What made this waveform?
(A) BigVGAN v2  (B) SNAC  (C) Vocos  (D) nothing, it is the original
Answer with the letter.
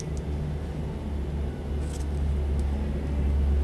D